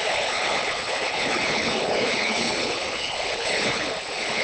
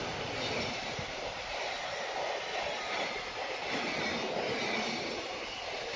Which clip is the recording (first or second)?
second